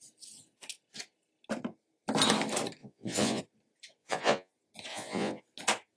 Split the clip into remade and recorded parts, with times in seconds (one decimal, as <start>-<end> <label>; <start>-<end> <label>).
0.0-2.8 recorded; 2.8-3.4 remade; 3.4-4.0 recorded; 4.0-4.5 remade; 4.5-4.9 recorded; 4.9-5.4 remade; 5.4-6.0 recorded